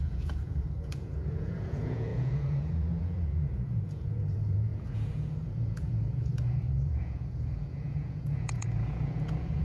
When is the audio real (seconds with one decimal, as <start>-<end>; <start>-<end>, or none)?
none